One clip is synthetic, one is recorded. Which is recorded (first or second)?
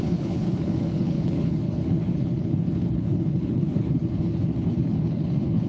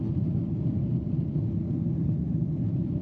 second